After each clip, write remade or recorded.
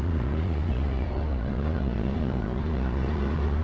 remade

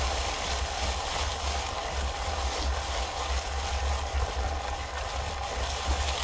recorded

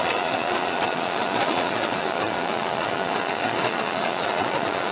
remade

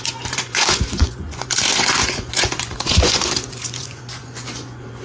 remade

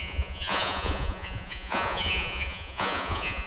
remade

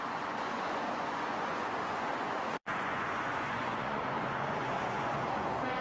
remade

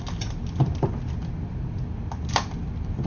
recorded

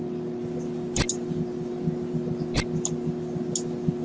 recorded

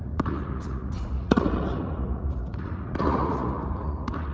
remade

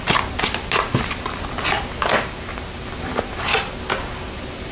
recorded